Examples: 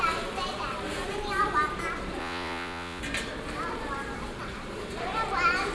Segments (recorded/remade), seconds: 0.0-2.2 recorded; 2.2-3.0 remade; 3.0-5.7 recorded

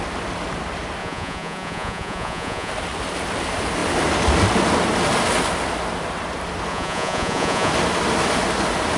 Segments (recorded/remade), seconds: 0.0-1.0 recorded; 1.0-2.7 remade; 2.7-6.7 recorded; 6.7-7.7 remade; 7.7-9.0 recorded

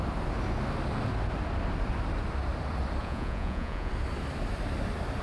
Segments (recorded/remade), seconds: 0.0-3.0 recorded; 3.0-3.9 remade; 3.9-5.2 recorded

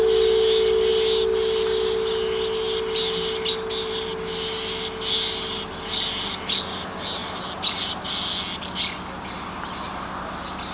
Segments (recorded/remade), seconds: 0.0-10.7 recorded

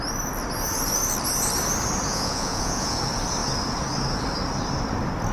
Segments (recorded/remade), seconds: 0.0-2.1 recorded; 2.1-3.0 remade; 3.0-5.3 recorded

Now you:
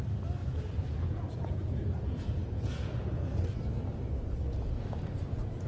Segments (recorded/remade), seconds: 0.0-0.4 recorded; 0.4-3.4 remade; 3.4-5.7 recorded

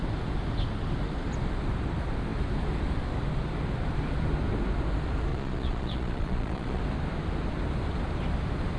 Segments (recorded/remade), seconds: 0.0-5.3 recorded; 5.3-6.8 remade; 6.8-8.8 recorded